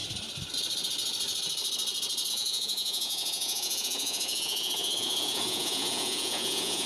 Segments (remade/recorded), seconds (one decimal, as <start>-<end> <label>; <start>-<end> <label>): 0.0-2.3 recorded; 2.3-6.9 remade